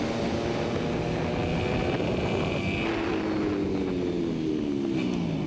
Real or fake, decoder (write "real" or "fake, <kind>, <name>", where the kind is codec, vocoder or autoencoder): real